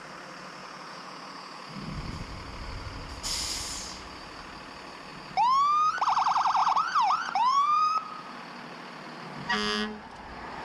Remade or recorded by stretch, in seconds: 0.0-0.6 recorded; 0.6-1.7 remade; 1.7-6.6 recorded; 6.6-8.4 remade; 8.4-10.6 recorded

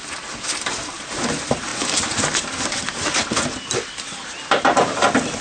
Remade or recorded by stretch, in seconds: 0.0-5.4 recorded

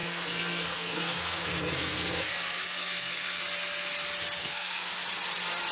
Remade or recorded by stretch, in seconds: 0.0-3.4 remade; 3.4-4.4 recorded; 4.4-4.9 remade; 4.9-5.7 recorded